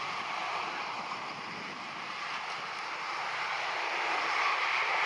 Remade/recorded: recorded